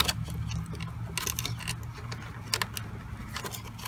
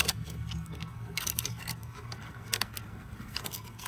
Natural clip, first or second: first